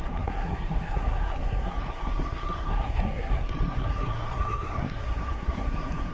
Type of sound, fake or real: fake